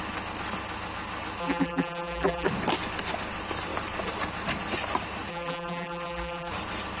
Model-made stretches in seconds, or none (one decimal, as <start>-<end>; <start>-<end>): 1.4-2.5; 5.3-6.5